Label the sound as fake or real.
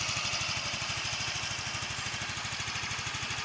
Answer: real